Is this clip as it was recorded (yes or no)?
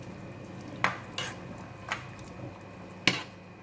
yes